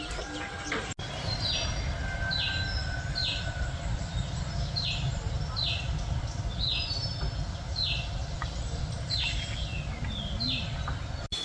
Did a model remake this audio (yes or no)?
no